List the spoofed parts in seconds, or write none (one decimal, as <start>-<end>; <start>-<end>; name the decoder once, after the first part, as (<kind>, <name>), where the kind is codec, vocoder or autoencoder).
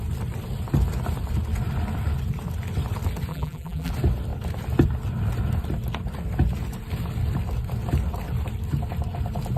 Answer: 3.3-3.9 (vocoder, BigVGAN v2)